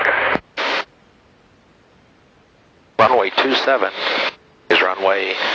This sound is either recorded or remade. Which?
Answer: recorded